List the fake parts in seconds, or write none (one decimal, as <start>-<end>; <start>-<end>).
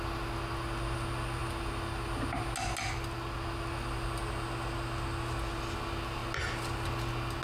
none